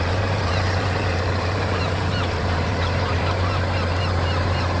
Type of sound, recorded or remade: remade